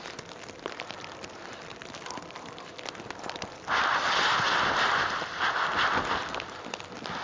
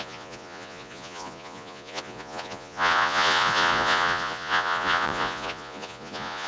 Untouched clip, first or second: first